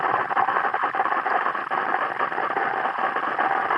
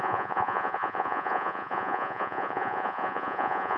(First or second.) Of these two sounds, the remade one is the second